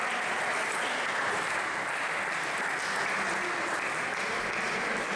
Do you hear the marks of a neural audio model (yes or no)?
no